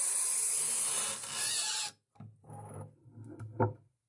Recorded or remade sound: recorded